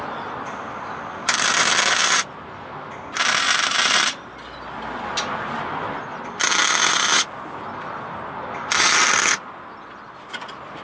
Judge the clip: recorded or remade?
recorded